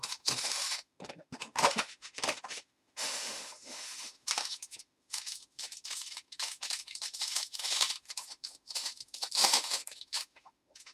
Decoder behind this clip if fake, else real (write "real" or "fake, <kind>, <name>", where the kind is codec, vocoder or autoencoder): fake, autoencoder, DAC-VAE